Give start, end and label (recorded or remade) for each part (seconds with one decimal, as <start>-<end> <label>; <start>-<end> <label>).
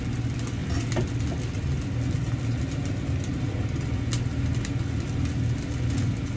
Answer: 0.0-0.6 recorded; 0.6-1.2 remade; 1.2-6.4 recorded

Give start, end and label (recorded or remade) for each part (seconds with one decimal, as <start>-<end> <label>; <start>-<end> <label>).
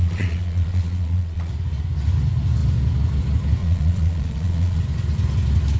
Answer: 0.0-1.5 remade; 1.5-3.6 recorded; 3.6-4.8 remade; 4.8-5.8 recorded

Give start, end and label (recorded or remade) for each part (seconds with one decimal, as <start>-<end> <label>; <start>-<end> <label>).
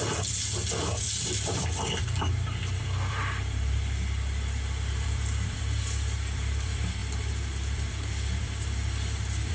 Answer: 0.0-9.5 remade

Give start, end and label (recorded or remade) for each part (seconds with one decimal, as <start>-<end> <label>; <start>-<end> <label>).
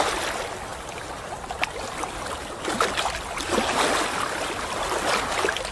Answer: 0.0-5.7 recorded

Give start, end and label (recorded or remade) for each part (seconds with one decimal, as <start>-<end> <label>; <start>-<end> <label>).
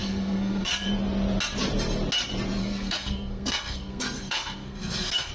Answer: 0.0-0.7 remade; 0.7-2.6 recorded; 2.6-5.3 remade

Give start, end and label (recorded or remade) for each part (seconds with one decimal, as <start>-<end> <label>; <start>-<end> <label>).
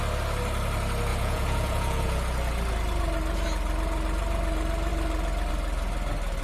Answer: 0.0-1.1 recorded; 1.1-2.2 remade; 2.2-6.4 recorded